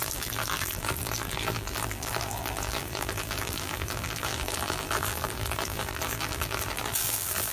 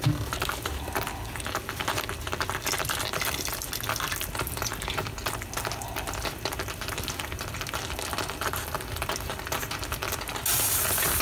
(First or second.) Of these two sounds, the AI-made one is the first